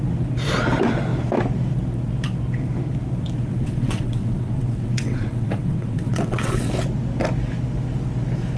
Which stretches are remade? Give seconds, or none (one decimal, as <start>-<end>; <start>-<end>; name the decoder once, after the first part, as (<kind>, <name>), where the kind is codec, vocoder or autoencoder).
3.5-6.7 (vocoder, WaveNeXt)